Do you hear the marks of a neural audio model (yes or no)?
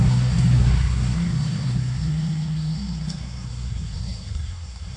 yes